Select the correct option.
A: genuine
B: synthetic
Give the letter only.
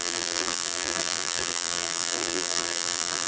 B